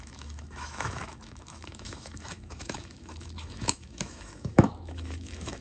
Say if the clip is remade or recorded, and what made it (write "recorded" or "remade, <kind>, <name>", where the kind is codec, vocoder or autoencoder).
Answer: remade, autoencoder, DAC-VAE